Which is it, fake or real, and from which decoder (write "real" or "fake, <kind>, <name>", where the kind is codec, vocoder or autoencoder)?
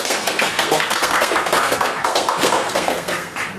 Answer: fake, codec, SNAC